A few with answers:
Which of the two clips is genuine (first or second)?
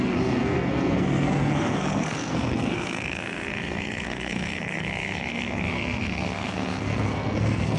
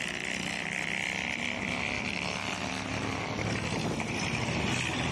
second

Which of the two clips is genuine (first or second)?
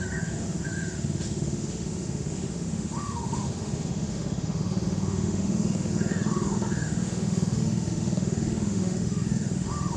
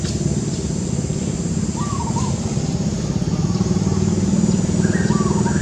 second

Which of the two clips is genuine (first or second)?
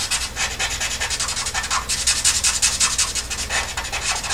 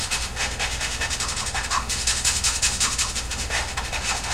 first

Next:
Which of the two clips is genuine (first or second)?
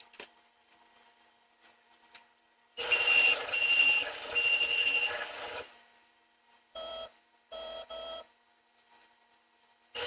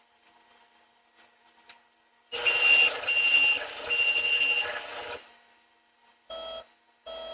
second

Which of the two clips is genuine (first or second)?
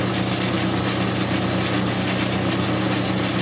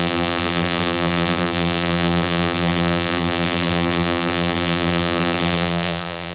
first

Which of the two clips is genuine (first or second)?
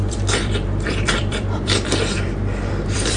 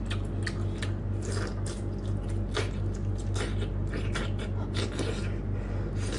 second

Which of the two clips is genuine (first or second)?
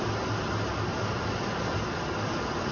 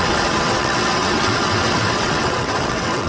first